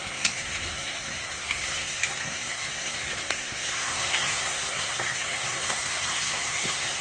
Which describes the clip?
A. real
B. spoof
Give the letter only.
B